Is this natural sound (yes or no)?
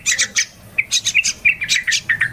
yes